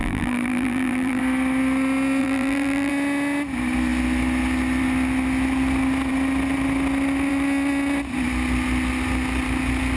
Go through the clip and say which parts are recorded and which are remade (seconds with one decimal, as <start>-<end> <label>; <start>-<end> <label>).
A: 0.0-1.2 remade; 1.2-2.2 recorded; 2.2-2.9 remade; 2.9-10.0 recorded